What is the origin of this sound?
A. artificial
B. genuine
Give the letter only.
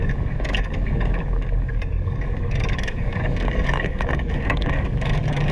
A